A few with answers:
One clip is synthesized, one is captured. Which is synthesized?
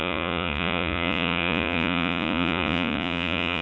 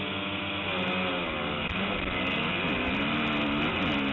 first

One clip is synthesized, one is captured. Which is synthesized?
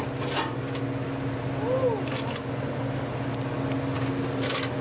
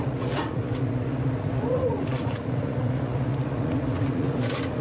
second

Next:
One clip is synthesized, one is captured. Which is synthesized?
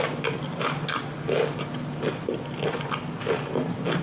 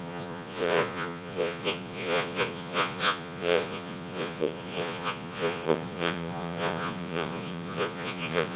second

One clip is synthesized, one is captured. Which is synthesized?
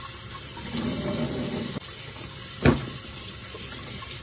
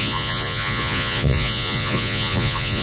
second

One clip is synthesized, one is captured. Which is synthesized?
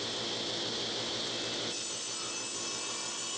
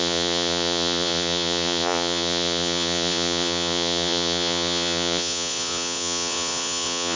second